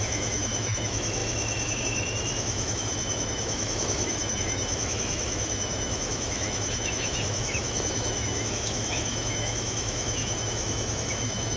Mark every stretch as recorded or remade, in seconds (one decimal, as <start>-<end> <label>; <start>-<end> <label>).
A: 0.0-11.6 remade